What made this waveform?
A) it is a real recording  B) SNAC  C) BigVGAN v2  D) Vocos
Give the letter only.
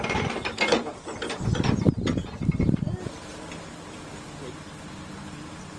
A